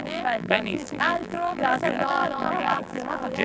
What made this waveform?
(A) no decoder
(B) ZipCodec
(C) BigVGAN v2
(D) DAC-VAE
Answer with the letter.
C